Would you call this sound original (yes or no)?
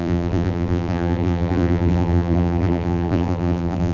no